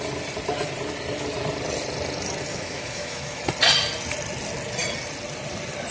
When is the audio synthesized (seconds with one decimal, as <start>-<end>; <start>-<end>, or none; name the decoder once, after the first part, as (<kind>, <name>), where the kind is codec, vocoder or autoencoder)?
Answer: 2.5-3.4 (autoencoder, DAC-VAE)